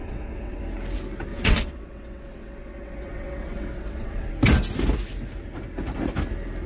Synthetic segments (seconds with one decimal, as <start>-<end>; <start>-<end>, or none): 0.0-0.6; 1.3-4.3